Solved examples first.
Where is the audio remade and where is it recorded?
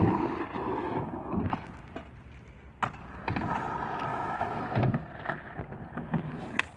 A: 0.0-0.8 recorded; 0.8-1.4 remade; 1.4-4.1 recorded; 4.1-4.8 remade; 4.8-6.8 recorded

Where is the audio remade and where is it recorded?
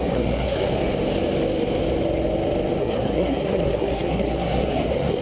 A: 0.0-0.7 remade; 0.7-2.8 recorded; 2.8-5.2 remade